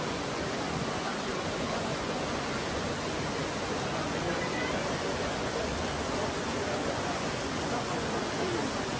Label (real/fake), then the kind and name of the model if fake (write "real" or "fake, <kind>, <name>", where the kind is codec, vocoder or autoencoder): fake, vocoder, Vocos